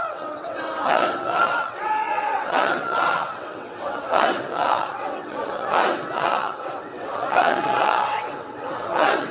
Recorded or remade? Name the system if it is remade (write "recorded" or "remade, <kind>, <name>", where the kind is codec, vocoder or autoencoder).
remade, vocoder, WaveNeXt